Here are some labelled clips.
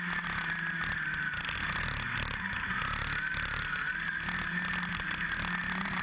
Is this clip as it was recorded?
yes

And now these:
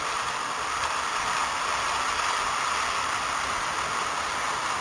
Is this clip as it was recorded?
yes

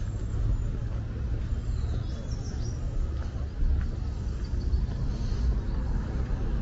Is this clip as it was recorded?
yes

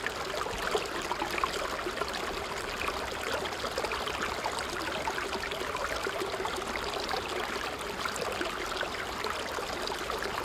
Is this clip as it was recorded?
yes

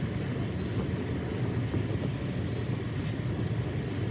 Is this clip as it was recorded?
yes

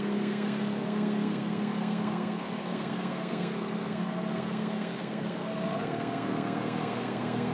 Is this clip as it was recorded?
no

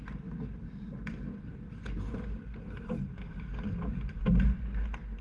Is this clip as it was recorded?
yes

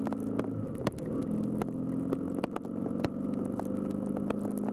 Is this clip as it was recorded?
yes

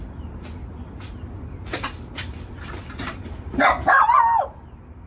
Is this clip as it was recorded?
no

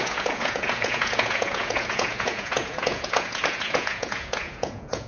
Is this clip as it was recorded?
no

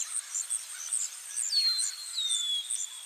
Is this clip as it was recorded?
yes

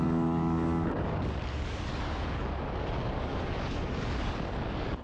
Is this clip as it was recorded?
no